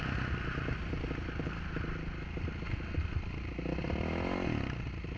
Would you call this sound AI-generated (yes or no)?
no